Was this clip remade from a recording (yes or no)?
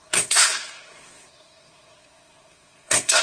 yes